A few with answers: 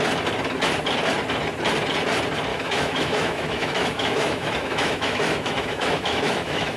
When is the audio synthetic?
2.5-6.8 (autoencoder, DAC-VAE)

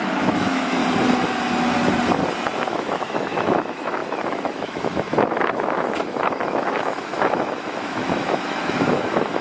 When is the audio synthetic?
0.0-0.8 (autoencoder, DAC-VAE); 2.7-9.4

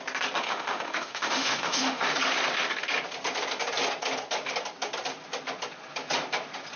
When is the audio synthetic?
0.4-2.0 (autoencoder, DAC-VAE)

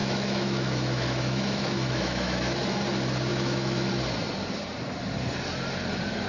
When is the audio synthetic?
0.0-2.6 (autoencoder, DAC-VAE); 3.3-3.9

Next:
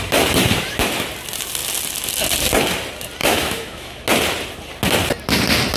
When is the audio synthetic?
3.2-4.0 (autoencoder, DAC-VAE)